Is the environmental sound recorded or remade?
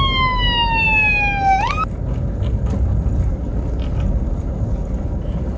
recorded